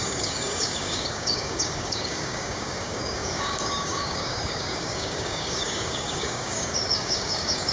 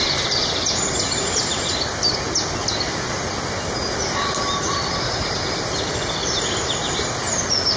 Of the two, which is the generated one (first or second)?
first